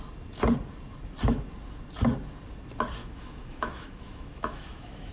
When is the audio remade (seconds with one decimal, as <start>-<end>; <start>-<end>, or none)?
3.0-5.1